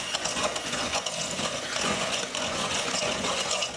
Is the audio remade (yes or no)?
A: yes